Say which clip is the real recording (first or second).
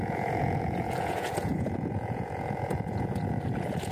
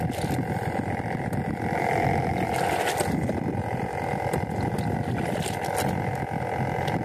second